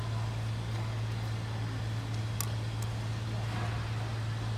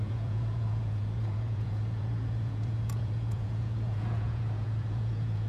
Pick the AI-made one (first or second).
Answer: second